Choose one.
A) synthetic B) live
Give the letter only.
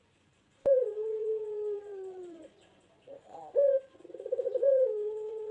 A